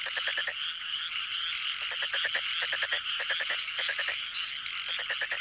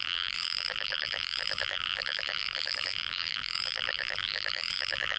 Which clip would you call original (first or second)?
first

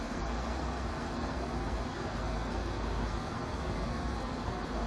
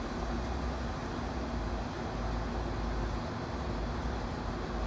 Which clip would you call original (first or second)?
second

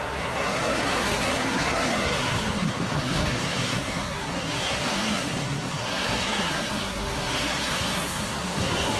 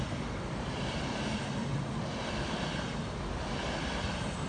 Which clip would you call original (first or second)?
second